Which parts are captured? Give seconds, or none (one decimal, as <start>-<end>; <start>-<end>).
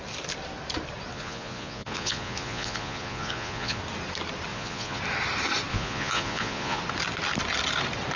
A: 0.0-1.1; 3.8-4.5; 5.0-5.7; 6.8-8.2